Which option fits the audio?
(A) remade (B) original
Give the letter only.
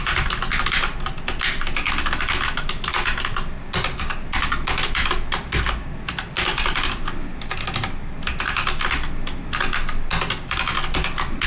B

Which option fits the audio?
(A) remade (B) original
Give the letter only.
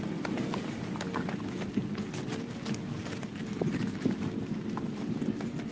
B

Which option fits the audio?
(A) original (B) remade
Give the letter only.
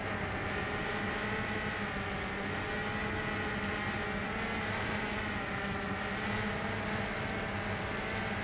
A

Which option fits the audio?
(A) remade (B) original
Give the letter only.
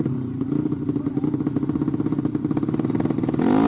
B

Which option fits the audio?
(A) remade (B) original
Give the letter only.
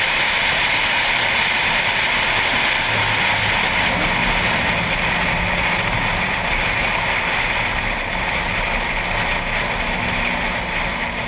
B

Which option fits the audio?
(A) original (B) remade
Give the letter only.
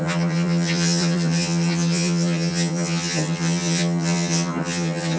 B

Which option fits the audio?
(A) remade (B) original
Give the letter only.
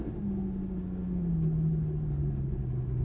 B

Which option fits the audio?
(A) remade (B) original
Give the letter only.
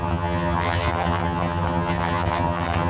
A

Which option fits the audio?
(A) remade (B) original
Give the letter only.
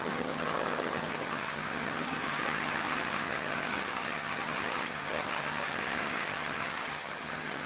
A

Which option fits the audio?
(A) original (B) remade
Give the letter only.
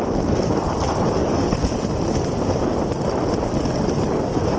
A